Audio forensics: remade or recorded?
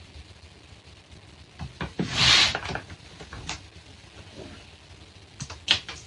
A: recorded